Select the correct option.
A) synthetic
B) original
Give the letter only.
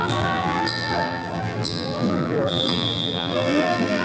A